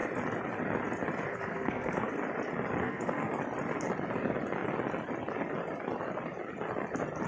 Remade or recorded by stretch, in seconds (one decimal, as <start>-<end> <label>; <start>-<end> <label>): 0.0-1.3 recorded; 1.3-2.1 remade; 2.1-2.8 recorded; 2.8-3.3 remade; 3.3-7.3 recorded